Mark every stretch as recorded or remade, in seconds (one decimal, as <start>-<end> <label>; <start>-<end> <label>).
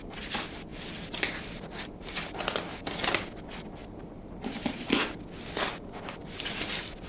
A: 0.0-7.1 recorded